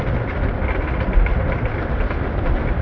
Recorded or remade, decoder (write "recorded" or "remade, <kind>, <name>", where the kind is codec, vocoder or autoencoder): recorded